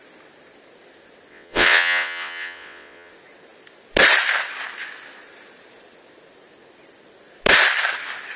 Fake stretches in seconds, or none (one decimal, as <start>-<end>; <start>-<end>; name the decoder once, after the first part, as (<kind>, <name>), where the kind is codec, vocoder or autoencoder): 1.3-3.1 (vocoder, WaveNeXt)